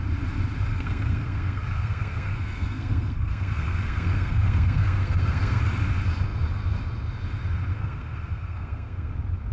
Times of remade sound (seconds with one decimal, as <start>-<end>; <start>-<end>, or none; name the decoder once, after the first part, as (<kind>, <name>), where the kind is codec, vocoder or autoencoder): 0.7-5.6 (codec, SNAC); 7.7-9.1